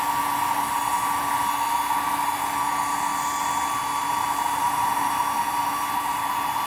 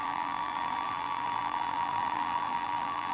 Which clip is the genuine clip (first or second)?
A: first